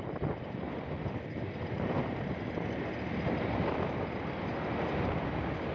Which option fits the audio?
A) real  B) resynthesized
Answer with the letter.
A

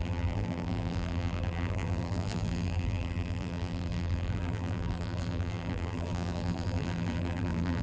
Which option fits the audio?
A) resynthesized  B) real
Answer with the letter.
A